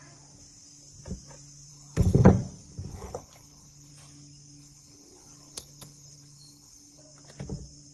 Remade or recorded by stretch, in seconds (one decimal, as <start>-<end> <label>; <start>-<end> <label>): 0.0-1.7 recorded; 1.7-2.3 remade; 2.3-2.9 recorded; 2.9-3.9 remade; 3.9-4.6 recorded; 4.6-7.0 remade; 7.0-7.9 recorded